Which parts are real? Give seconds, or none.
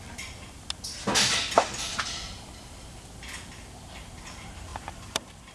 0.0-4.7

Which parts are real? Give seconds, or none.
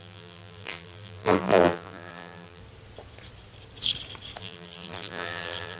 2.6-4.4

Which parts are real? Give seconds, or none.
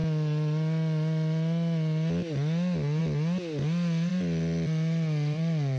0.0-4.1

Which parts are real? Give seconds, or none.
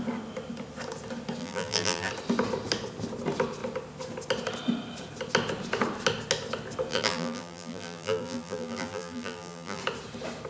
0.0-1.4; 2.1-6.9; 9.8-10.5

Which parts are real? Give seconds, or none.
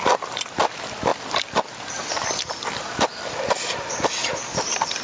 none